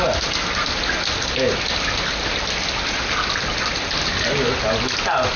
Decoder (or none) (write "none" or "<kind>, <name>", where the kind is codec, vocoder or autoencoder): none